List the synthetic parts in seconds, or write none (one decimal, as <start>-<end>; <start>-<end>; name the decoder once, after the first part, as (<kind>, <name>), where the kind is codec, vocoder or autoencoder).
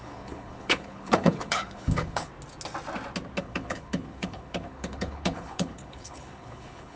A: 0.0-2.3 (codec, HILCodec); 3.4-7.0